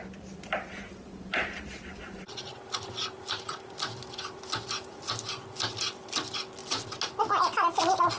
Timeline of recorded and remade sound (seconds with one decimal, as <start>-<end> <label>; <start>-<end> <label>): 0.0-8.2 recorded